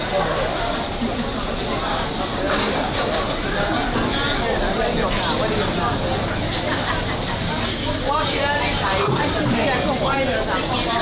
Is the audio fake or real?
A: real